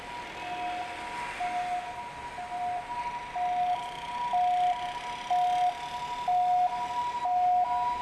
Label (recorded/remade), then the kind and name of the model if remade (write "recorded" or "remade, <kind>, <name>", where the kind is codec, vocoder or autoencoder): recorded